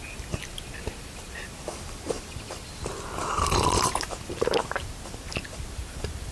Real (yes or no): yes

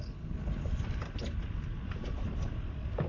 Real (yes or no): yes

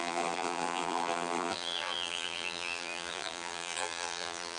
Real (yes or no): no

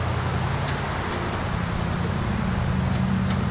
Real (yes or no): yes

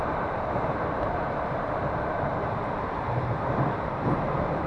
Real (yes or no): no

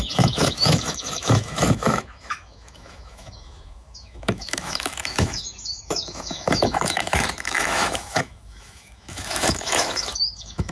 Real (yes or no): no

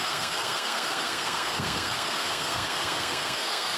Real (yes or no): no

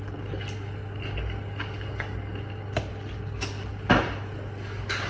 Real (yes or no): yes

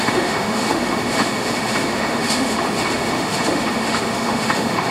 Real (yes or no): no